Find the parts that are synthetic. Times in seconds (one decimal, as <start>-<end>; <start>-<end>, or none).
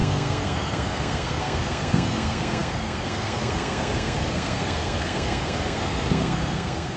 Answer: 0.0-7.0